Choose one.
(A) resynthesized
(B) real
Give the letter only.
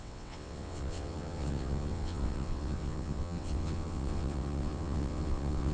A